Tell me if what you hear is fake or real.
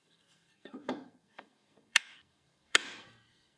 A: fake